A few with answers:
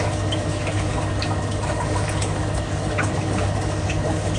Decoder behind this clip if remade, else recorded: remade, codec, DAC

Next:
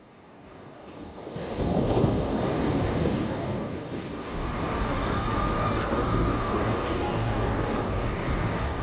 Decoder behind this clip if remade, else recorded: remade, codec, DAC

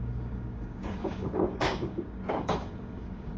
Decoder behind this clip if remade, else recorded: remade, codec, DAC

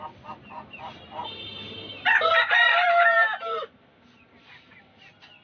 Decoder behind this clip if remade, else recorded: recorded